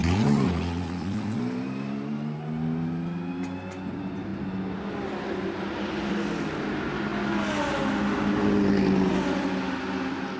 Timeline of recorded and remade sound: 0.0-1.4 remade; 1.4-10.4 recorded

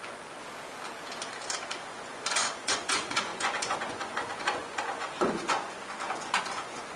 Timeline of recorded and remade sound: 0.0-0.4 remade; 0.4-1.7 recorded; 1.7-7.0 remade

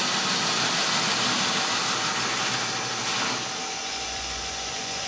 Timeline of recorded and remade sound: 0.0-3.7 recorded; 3.7-5.1 remade

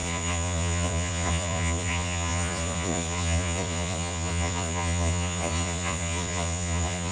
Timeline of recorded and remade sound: 0.0-7.1 remade

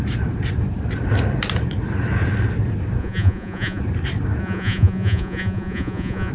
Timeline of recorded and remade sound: 0.0-3.0 recorded; 3.0-3.8 remade; 3.8-4.4 recorded; 4.4-6.3 remade

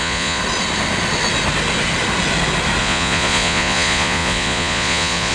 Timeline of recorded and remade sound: 0.0-0.4 remade; 0.4-2.8 recorded; 2.8-5.3 remade